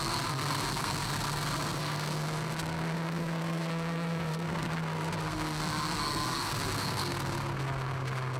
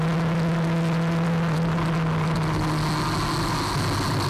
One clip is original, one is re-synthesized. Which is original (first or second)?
second